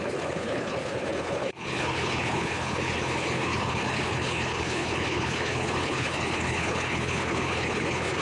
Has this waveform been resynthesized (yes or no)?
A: yes